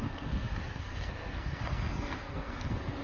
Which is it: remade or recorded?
remade